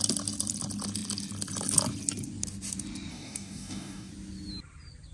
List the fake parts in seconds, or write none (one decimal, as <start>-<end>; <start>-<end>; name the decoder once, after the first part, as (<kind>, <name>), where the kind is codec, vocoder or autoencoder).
3.1-4.1 (codec, DAC)